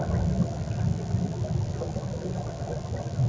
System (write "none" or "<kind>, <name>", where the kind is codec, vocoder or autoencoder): none